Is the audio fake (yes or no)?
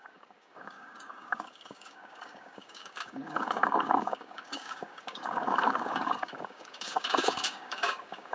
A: yes